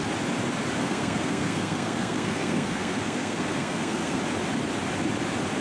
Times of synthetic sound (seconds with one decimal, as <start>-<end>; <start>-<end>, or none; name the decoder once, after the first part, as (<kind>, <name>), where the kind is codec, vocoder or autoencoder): 0.8-4.2 (codec, SNAC)